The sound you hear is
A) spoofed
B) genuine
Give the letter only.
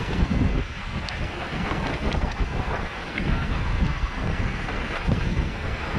A